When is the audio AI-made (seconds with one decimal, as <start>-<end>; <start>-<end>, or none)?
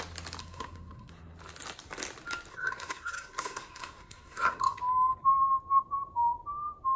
0.4-1.1; 2.5-4.8